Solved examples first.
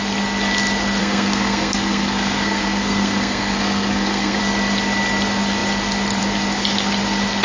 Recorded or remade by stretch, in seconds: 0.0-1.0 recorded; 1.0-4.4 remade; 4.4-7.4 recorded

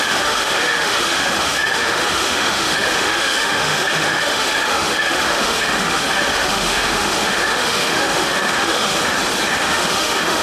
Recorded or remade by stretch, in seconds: 0.0-9.0 remade; 9.0-9.6 recorded; 9.6-10.4 remade

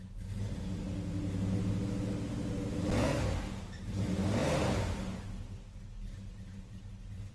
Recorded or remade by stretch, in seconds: 0.0-3.0 recorded; 3.0-3.7 remade; 3.7-7.3 recorded

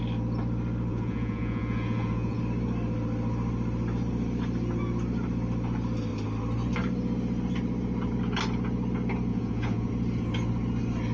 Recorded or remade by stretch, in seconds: 0.0-0.9 recorded; 0.9-2.4 remade; 2.4-9.3 recorded; 9.3-9.9 remade; 9.9-11.1 recorded